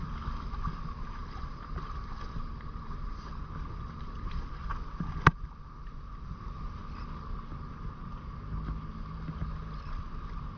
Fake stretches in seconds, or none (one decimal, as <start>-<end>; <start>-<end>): 1.2-4.7